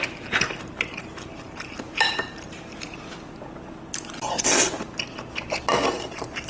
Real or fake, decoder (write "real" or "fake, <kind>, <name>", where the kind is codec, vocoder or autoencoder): real